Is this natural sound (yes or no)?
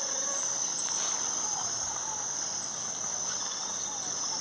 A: yes